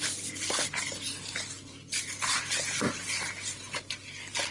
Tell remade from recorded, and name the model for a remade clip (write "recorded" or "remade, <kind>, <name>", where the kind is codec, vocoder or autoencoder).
recorded